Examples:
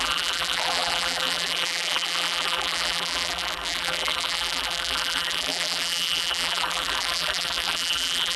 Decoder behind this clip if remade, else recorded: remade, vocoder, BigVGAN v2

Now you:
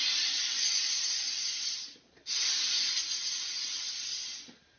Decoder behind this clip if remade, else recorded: recorded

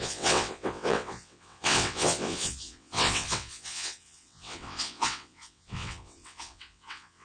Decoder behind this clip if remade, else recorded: remade, vocoder, WaveNeXt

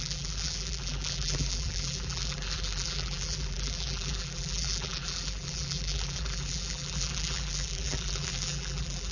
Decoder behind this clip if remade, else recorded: remade, vocoder, BigVGAN v2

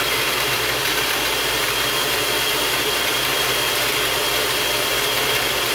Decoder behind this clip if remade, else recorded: recorded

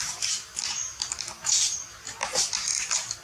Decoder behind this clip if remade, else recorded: recorded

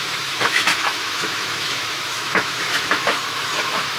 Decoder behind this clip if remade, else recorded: remade, autoencoder, DAC-VAE